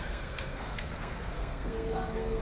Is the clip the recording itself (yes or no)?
no